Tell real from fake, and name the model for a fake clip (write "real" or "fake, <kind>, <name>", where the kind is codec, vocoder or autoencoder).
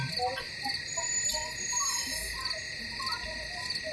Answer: real